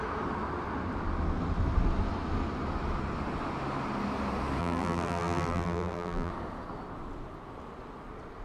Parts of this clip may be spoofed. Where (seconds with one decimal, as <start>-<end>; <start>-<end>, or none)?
4.6-6.3